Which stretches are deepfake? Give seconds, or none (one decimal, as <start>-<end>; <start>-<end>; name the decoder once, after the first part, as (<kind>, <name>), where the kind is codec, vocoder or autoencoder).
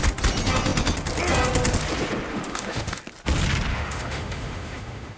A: 2.3-3.0 (autoencoder, DAC-VAE); 3.7-5.2